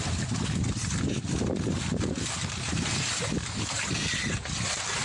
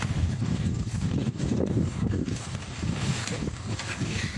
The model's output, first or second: second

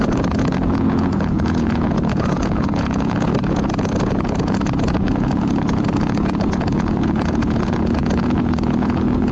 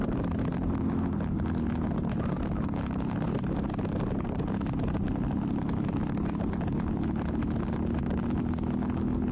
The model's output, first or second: first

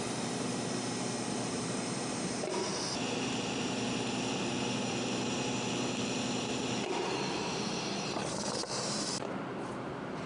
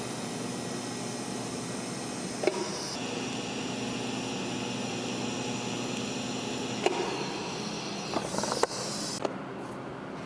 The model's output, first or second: first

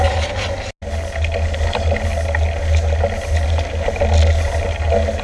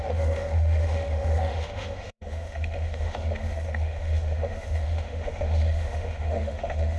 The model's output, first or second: second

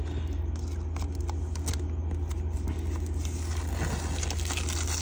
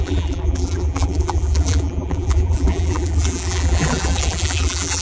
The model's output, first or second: second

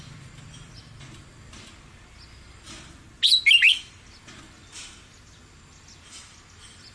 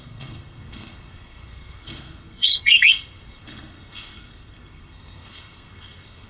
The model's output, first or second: second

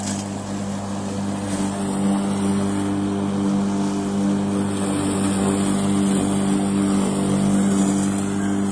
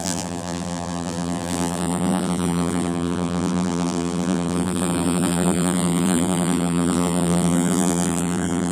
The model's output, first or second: second